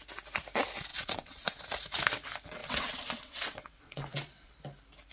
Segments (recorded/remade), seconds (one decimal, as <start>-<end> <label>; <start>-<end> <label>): 0.0-0.9 recorded; 0.9-1.6 remade; 1.6-2.6 recorded; 2.6-4.5 remade; 4.5-5.1 recorded